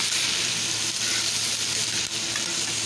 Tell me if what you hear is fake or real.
fake